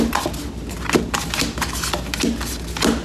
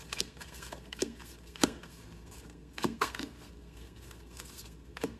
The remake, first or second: second